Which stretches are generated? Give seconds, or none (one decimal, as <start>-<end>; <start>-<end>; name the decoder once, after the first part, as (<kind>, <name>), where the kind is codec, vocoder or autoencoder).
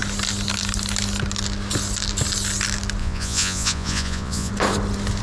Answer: 3.0-4.5 (vocoder, Vocos)